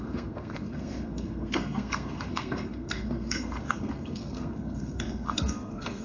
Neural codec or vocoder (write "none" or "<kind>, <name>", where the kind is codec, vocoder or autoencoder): codec, SNAC